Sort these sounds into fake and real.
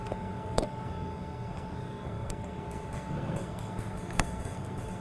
fake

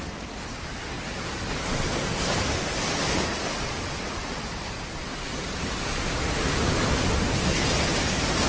real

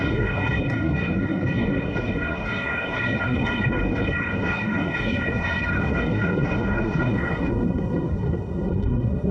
fake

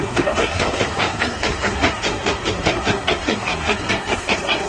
fake